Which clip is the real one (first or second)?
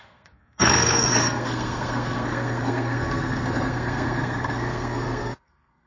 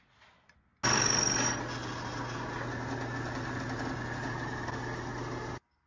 second